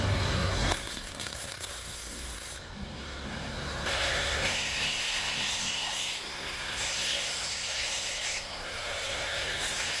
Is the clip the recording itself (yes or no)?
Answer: no